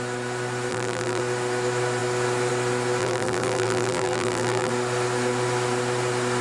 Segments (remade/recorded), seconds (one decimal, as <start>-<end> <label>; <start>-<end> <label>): 0.0-0.7 recorded; 0.7-1.2 remade; 1.2-3.0 recorded; 3.0-4.7 remade; 4.7-6.4 recorded